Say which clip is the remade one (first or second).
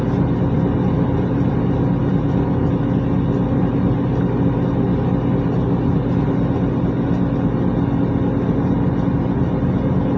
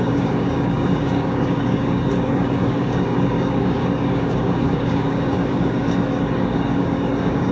second